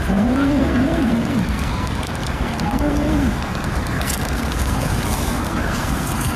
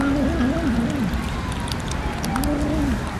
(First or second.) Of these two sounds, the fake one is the first